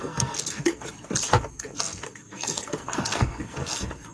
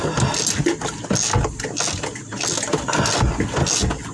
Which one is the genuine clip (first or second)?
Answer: second